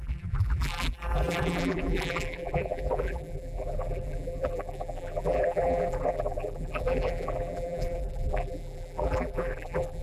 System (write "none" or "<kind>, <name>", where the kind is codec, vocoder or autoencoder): vocoder, BigVGAN v2